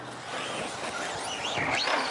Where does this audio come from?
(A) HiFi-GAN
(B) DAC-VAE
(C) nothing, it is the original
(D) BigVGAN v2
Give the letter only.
C